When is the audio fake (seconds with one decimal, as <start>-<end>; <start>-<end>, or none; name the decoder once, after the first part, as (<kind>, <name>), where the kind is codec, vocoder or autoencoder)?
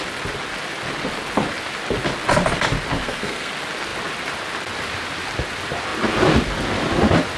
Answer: 3.0-3.5 (codec, SNAC)